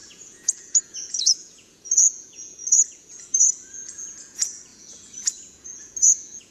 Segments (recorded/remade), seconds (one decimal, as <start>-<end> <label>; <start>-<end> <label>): 0.0-6.5 remade